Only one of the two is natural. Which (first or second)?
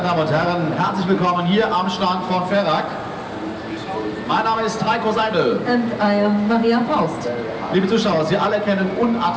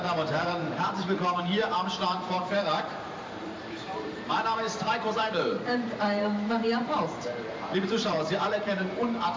first